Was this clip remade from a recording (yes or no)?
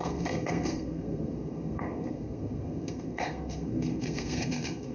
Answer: yes